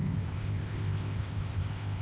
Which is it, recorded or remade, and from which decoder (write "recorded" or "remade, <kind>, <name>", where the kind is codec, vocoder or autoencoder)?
remade, codec, ZipCodec